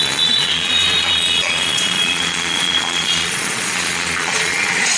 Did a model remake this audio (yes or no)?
yes